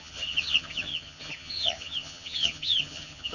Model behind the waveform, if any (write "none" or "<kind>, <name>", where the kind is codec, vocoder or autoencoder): vocoder, HiFi-GAN